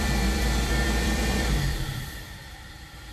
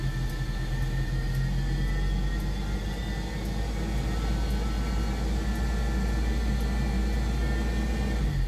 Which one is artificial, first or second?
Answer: first